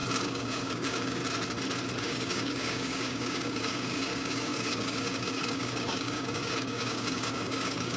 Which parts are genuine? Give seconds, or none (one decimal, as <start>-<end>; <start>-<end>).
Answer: 1.2-2.0